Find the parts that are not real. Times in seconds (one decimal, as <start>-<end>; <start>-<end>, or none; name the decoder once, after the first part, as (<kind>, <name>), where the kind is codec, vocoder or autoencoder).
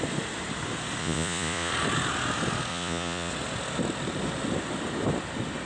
1.0-1.7 (vocoder, Vocos); 2.7-3.3